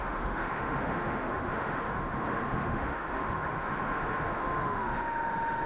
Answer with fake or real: fake